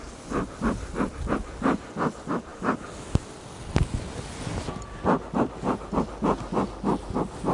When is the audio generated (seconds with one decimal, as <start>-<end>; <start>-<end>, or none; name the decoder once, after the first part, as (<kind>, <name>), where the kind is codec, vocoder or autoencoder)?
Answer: none